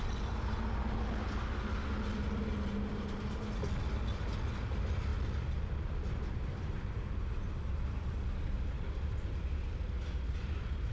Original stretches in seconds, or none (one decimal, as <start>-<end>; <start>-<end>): 0.0-10.9